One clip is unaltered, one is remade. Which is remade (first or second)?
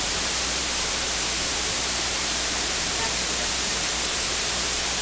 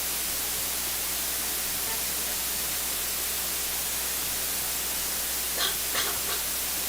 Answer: first